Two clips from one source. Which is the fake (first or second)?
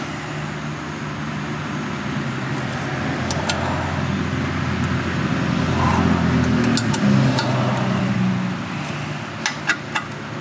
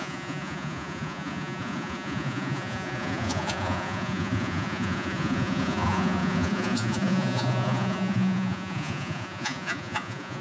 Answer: second